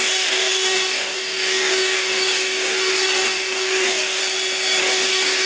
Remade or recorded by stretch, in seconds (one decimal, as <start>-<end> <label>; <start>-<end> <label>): 0.0-4.2 remade; 4.2-4.8 recorded; 4.8-5.5 remade